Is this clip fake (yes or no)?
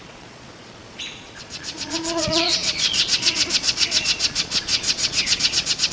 yes